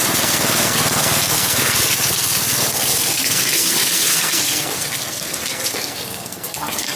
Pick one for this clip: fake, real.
fake